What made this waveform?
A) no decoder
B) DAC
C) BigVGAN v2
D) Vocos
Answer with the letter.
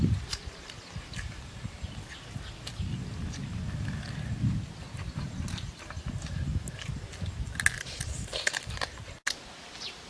A